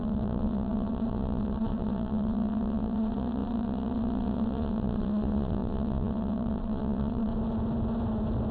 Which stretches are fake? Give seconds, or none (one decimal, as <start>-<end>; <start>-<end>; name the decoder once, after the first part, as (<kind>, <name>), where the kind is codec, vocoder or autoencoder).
0.0-7.3 (vocoder, Vocos)